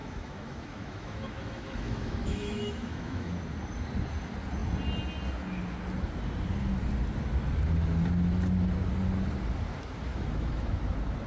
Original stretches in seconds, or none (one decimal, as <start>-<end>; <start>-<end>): 3.3-10.1; 10.8-11.3